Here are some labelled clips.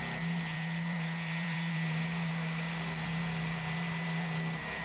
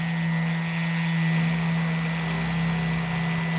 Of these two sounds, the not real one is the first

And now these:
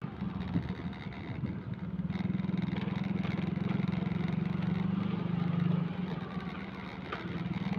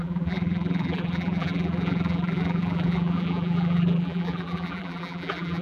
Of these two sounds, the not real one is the second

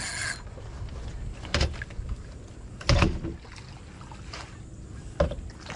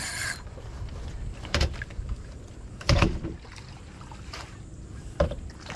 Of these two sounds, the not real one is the second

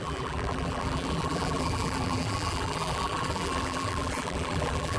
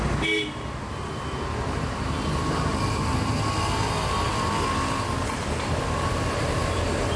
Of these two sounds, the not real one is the first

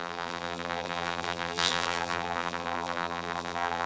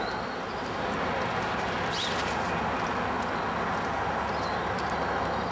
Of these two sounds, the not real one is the first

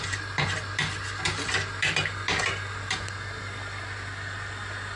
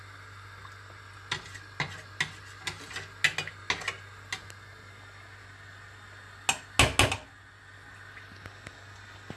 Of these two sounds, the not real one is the first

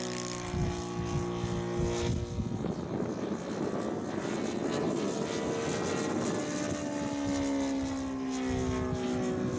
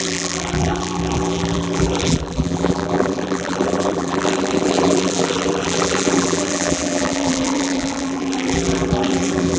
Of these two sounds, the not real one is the second